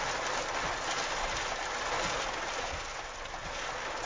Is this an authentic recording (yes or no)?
yes